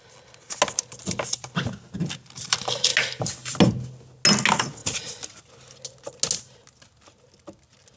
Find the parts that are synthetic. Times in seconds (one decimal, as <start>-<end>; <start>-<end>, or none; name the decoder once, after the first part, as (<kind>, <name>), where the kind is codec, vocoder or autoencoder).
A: none